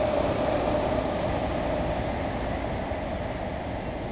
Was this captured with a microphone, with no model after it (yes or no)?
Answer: yes